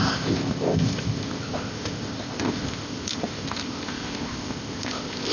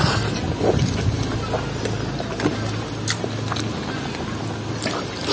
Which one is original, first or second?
second